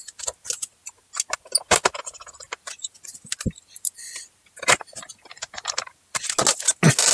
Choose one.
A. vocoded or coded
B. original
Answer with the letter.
B